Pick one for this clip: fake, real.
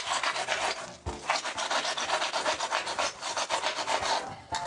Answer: real